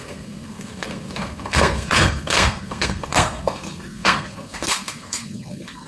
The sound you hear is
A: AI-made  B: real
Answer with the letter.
A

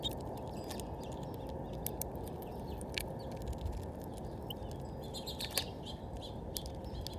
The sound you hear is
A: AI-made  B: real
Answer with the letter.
B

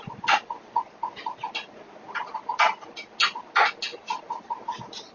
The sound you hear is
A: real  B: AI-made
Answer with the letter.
A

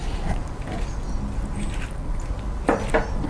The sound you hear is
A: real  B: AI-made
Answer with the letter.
A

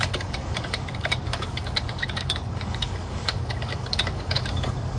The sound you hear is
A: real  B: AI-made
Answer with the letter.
B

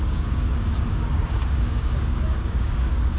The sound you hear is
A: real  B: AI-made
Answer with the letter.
B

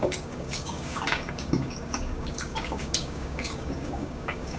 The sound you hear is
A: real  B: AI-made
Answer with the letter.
B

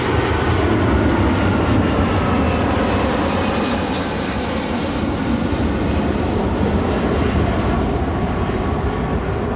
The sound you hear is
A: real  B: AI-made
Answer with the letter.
A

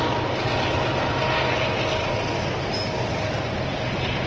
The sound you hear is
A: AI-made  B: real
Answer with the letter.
B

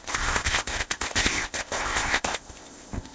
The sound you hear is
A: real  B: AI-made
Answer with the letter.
B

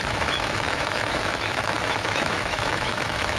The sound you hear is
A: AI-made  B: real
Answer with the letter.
A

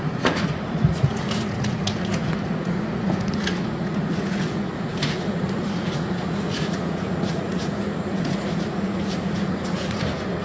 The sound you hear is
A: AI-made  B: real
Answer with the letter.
A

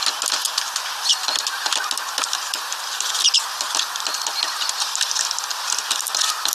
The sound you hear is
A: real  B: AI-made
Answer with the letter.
A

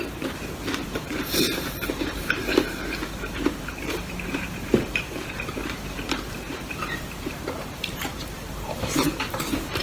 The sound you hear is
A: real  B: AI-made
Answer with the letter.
B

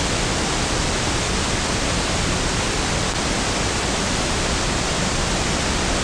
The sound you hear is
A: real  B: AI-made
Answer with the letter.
A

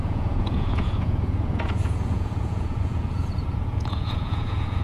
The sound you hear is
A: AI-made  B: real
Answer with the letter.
A